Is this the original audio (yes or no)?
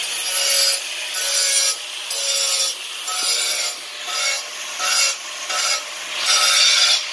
yes